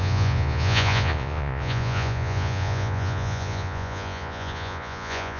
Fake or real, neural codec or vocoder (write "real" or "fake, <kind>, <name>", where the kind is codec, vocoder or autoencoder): fake, vocoder, Vocos